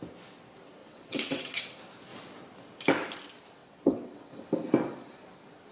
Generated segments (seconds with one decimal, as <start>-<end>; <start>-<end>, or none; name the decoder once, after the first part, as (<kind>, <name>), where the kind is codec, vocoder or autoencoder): 0.8-1.7 (vocoder, WaveNeXt); 3.6-4.4